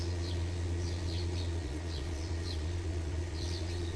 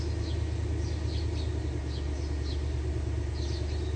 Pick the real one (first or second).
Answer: second